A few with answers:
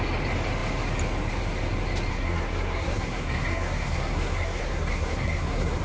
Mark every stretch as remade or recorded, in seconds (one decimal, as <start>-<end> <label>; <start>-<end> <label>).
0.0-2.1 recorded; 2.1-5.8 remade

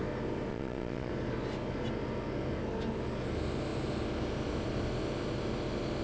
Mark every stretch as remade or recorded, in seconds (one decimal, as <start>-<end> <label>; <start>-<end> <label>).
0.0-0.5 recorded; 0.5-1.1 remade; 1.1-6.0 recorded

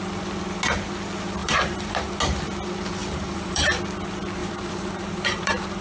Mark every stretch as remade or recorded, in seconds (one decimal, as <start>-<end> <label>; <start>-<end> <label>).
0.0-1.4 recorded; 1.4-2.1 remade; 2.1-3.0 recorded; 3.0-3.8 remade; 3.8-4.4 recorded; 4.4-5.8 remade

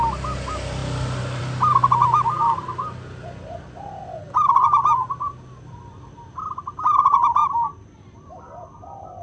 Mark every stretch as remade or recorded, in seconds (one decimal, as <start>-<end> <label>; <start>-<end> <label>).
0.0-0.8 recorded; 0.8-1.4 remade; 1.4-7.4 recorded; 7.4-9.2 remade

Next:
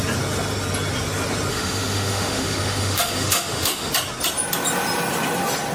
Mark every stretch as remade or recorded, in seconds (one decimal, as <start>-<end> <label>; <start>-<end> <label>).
0.0-1.5 recorded; 1.5-3.9 remade; 3.9-5.7 recorded

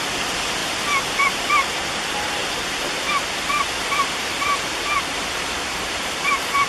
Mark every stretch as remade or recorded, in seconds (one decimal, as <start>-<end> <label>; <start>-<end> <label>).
0.0-2.4 recorded; 2.4-6.7 remade

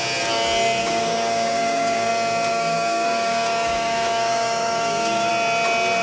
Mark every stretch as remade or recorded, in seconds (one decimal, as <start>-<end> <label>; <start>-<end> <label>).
0.0-0.8 recorded; 0.8-2.1 remade; 2.1-2.5 recorded; 2.5-5.3 remade; 5.3-6.0 recorded

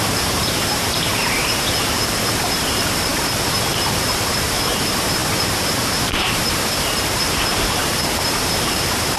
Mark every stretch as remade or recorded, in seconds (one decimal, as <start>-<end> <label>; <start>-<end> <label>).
0.0-1.4 remade; 1.4-2.2 recorded; 2.2-3.7 remade; 3.7-4.3 recorded; 4.3-9.2 remade